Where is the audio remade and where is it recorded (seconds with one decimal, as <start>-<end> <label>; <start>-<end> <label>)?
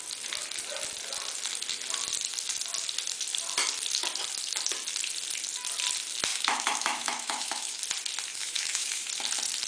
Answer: 0.0-6.3 recorded; 6.3-7.8 remade; 7.8-8.3 recorded; 8.3-9.1 remade; 9.1-9.7 recorded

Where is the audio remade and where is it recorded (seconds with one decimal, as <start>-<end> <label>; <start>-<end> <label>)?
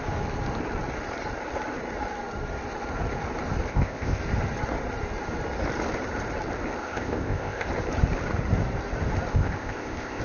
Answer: 0.0-3.7 recorded; 3.7-4.2 remade; 4.2-6.8 recorded; 6.8-7.7 remade; 7.7-9.3 recorded; 9.3-10.2 remade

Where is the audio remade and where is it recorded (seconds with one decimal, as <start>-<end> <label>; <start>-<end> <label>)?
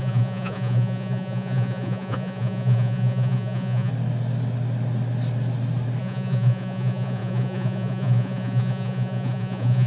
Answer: 0.0-3.9 remade; 3.9-6.0 recorded; 6.0-9.9 remade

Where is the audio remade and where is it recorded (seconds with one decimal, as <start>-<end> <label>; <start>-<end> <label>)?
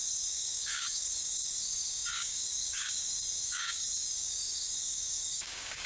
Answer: 0.0-5.9 remade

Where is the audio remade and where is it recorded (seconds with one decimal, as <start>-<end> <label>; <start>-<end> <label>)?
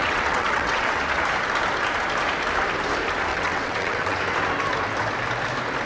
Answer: 0.0-1.0 remade; 1.0-3.3 recorded; 3.3-4.2 remade; 4.2-5.9 recorded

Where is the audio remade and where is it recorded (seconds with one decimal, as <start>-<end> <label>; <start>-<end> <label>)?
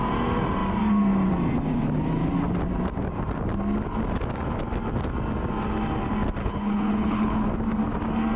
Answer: 0.0-6.4 recorded; 6.4-7.5 remade; 7.5-8.4 recorded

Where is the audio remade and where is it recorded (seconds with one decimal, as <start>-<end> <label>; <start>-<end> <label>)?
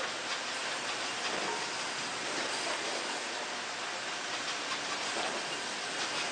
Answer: 0.0-6.3 recorded